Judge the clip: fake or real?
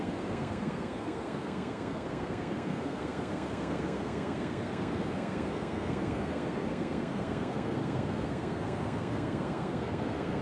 fake